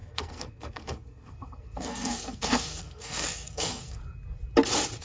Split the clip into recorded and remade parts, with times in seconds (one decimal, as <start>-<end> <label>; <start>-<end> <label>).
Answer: 0.0-4.0 remade; 4.0-5.0 recorded